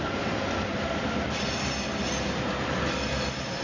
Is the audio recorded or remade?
remade